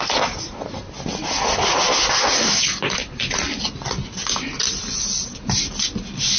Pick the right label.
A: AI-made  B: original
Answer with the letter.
B